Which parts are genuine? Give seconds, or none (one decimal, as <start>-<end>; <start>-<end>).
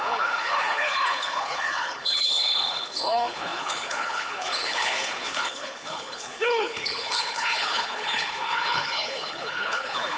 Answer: none